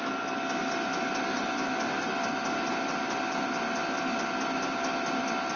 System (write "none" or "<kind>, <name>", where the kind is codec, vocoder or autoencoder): none